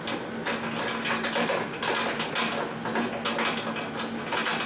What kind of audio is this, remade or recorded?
recorded